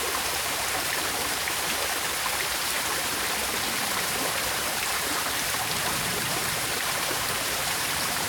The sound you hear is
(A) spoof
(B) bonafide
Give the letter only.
A